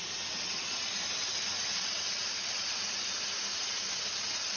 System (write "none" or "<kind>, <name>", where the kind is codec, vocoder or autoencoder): none